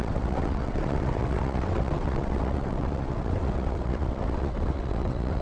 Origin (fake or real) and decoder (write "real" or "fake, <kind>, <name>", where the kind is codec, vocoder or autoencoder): fake, vocoder, WaveNeXt